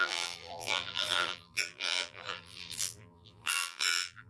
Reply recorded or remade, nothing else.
remade